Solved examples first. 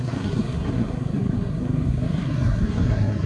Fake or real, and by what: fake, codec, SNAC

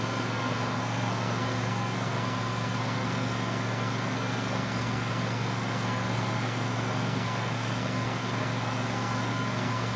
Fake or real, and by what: fake, codec, SNAC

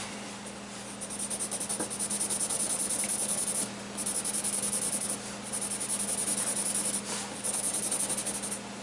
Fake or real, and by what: real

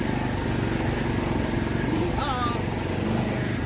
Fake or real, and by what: real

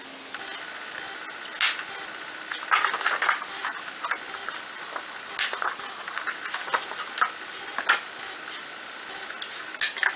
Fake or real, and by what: real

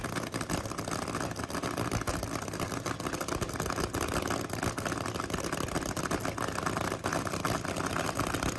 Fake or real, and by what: real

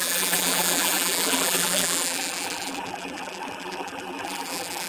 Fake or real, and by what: fake, vocoder, BigVGAN v2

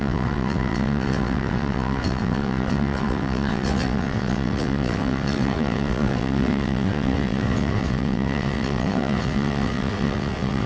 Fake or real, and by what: fake, vocoder, WaveNeXt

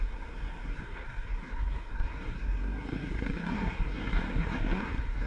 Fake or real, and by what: fake, codec, SNAC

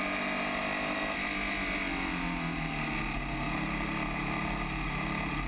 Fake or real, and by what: real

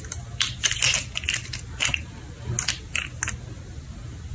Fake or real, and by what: real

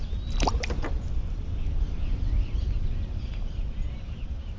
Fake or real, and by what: real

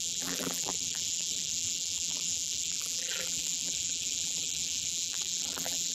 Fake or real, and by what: fake, vocoder, BigVGAN v2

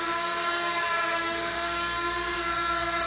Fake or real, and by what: fake, codec, DAC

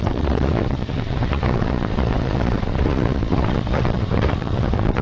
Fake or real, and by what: fake, vocoder, WaveNeXt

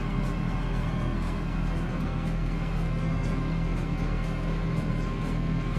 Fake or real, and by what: fake, codec, SNAC